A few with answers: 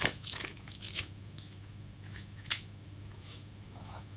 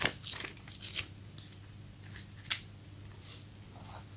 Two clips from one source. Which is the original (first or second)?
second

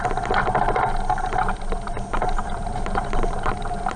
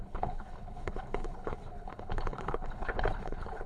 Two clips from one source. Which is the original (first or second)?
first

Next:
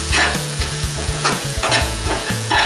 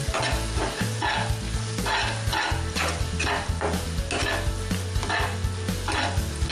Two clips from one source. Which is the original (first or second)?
second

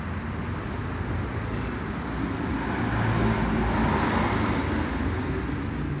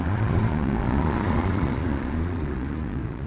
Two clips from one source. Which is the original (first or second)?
first